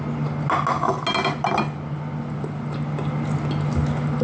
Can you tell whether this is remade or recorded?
recorded